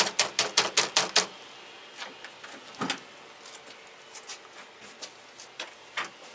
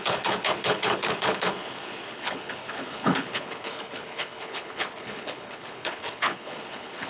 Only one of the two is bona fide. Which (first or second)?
first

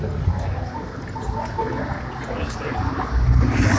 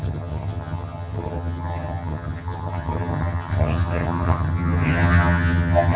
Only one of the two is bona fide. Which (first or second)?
first